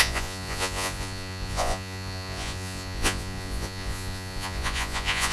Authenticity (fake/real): fake